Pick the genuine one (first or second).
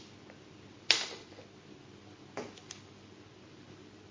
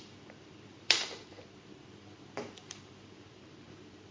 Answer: first